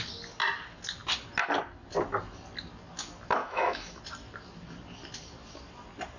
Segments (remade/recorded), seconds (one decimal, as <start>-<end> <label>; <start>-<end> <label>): 0.0-3.4 recorded; 3.4-4.0 remade; 4.0-6.2 recorded